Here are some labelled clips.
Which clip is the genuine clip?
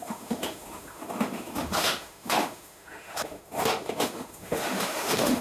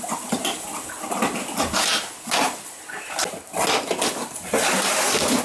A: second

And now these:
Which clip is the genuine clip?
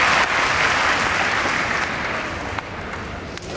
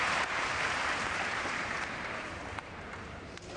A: first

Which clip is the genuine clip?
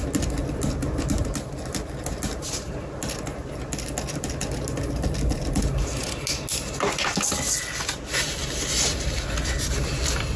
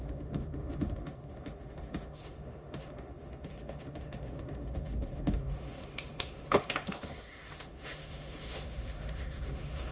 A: first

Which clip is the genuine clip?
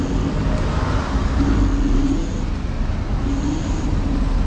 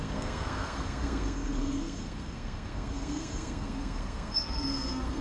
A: first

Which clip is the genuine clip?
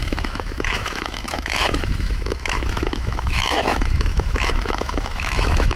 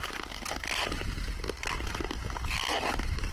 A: second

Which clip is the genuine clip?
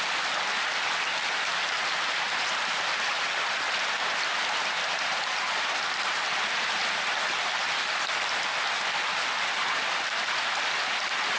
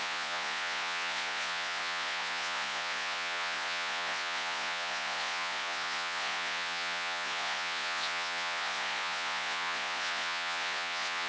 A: first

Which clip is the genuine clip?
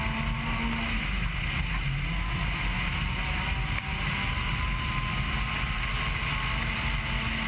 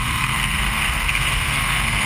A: first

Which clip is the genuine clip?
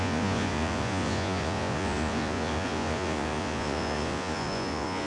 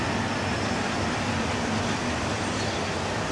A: second